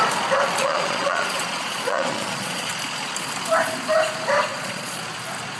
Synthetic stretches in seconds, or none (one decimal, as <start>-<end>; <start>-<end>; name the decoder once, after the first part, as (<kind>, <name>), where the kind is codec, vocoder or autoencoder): 0.6-2.7 (vocoder, Vocos); 4.5-5.0